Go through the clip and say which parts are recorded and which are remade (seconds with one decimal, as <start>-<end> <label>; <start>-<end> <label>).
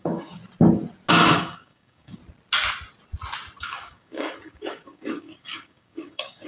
0.0-0.4 remade; 0.4-1.1 recorded; 1.1-2.2 remade; 2.2-3.6 recorded; 3.6-6.5 remade